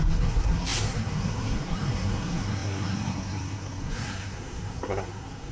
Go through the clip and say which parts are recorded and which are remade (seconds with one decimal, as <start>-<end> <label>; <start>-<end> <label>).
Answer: 0.0-5.5 remade

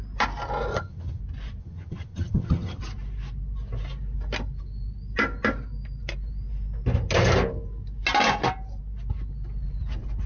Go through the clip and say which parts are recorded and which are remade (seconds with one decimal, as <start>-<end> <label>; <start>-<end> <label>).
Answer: 0.0-0.7 recorded; 0.7-1.2 remade; 1.2-1.6 recorded; 1.6-2.8 remade; 2.8-10.3 recorded

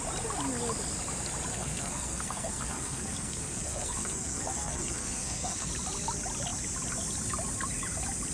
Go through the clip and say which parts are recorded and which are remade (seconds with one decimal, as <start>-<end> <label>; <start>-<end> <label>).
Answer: 0.0-1.5 recorded; 1.5-5.7 remade; 5.7-8.3 recorded

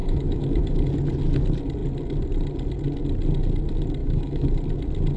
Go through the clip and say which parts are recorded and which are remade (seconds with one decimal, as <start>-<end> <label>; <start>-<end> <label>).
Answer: 0.0-0.8 remade; 0.8-4.0 recorded; 4.0-4.5 remade; 4.5-5.2 recorded

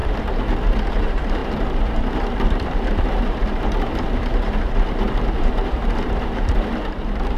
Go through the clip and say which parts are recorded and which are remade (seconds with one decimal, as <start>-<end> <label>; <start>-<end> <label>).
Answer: 0.0-0.9 recorded; 0.9-7.4 remade